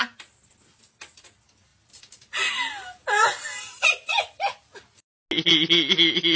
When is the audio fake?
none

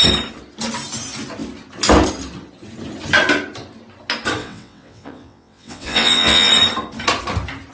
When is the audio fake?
4.4-6.5 (vocoder, WaveNeXt)